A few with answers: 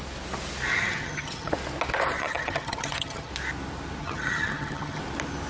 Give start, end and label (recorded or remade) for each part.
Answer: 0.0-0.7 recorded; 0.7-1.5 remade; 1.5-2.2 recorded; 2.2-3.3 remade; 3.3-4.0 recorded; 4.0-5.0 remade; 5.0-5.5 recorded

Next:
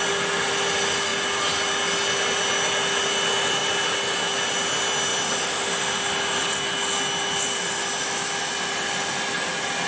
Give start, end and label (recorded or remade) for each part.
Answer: 0.0-9.9 recorded

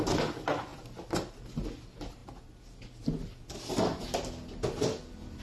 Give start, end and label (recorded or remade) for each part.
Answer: 0.0-5.4 recorded